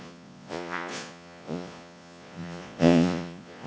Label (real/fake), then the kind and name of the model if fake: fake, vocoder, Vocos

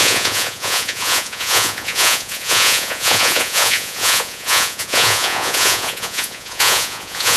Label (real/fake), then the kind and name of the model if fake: fake, vocoder, Vocos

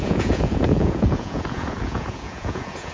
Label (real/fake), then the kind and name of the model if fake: fake, vocoder, Vocos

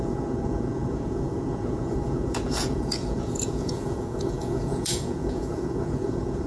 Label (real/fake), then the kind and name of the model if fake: fake, vocoder, Vocos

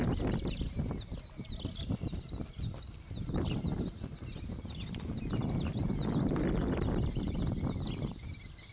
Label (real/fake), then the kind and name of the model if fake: real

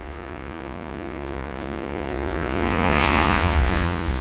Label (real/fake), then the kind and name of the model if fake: fake, vocoder, Vocos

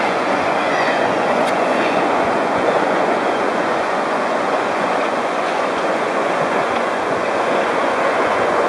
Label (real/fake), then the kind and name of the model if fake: fake, vocoder, Vocos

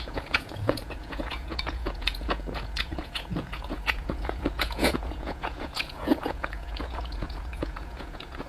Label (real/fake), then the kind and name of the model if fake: fake, vocoder, Vocos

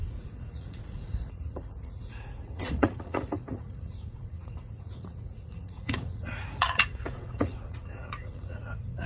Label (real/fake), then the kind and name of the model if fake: fake, vocoder, Vocos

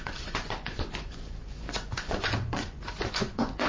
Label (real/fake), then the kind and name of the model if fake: fake, vocoder, Vocos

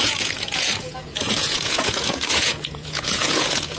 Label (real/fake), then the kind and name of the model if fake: fake, vocoder, Vocos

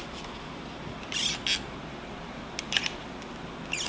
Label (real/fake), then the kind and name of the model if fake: real